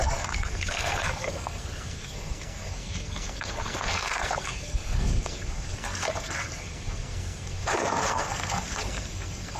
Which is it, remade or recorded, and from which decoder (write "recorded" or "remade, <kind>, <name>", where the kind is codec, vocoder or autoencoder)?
remade, codec, SNAC